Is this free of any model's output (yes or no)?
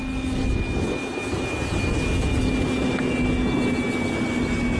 yes